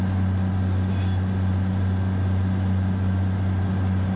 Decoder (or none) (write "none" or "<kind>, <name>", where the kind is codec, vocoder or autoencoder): none